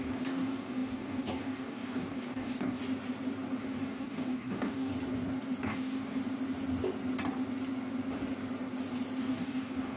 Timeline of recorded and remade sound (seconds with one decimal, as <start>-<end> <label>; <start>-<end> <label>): 0.0-2.8 remade; 2.8-3.6 recorded; 3.6-4.9 remade; 4.9-5.6 recorded; 5.6-6.2 remade; 6.2-9.2 recorded; 9.2-10.0 remade